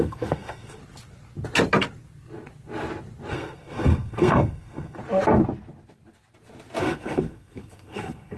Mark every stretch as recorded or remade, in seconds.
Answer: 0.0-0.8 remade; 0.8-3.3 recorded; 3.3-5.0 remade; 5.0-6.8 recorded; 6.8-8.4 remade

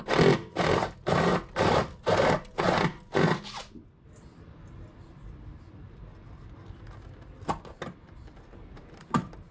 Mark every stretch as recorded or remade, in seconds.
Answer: 0.0-9.5 recorded

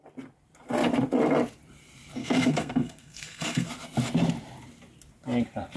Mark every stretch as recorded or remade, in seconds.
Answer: 0.0-2.2 recorded; 2.2-3.7 remade; 3.7-5.8 recorded

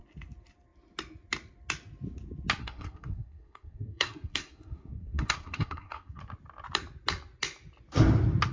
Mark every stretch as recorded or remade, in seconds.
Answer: 0.0-2.6 recorded; 2.6-6.2 remade; 6.2-8.5 recorded

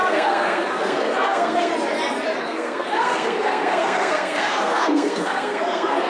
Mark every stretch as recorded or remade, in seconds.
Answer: 0.0-1.7 remade; 1.7-2.4 recorded; 2.4-6.1 remade

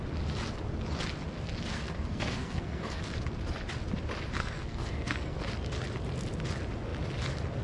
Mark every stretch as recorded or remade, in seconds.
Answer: 0.0-1.7 recorded; 1.7-3.0 remade; 3.0-4.4 recorded; 4.4-5.4 remade; 5.4-7.6 recorded